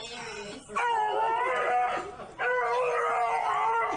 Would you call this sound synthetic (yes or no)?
no